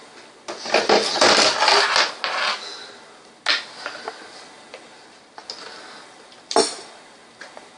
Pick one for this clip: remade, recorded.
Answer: recorded